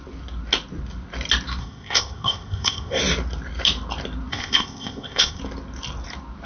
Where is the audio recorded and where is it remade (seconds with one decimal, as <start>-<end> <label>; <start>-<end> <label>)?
0.0-1.6 recorded; 1.6-3.0 remade; 3.0-4.3 recorded; 4.3-5.4 remade; 5.4-6.5 recorded